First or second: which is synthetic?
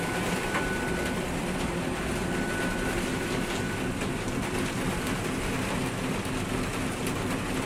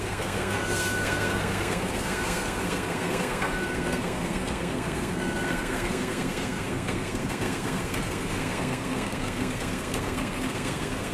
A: second